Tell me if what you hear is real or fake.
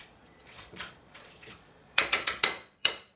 fake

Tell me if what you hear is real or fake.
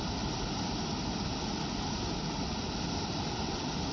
real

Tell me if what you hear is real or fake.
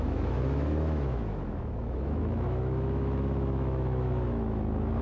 fake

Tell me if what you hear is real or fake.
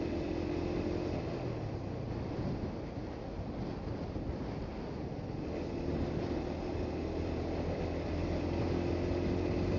real